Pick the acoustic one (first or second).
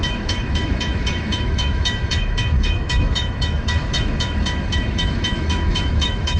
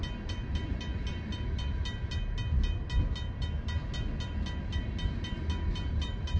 second